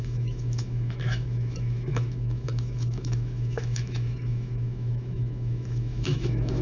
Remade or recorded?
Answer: remade